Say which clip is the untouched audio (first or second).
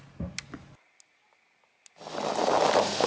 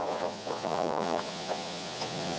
first